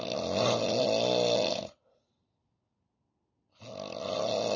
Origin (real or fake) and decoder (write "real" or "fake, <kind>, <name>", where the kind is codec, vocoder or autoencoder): real